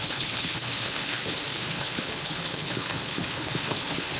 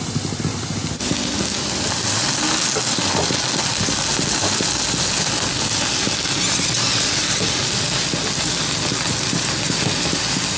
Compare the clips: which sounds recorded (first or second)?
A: second